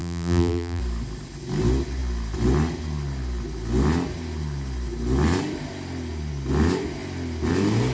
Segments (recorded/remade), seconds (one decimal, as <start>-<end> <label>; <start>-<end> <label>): 0.0-0.8 remade; 0.8-7.9 recorded